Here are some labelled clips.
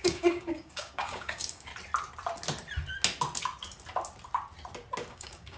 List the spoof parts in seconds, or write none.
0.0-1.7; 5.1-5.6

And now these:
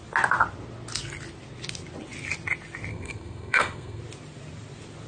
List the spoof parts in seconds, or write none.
2.9-4.0